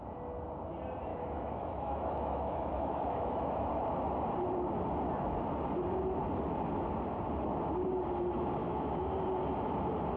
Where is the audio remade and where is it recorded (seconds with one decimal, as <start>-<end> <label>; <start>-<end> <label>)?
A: 0.0-1.1 recorded; 1.1-3.7 remade; 3.7-8.6 recorded; 8.6-9.1 remade; 9.1-10.2 recorded